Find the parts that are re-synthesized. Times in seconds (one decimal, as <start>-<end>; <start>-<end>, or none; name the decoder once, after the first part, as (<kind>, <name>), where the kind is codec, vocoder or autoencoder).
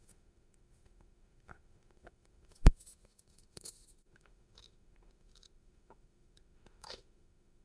0.0-7.6 (autoencoder, DAC-VAE)